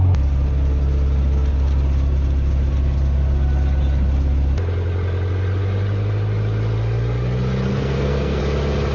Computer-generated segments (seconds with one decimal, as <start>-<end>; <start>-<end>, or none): 7.7-8.4